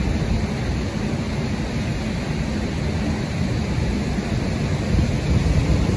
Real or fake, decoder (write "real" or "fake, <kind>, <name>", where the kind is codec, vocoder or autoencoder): real